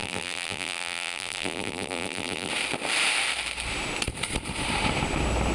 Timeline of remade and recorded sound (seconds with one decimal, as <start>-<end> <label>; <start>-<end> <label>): 0.0-2.5 remade; 2.5-5.5 recorded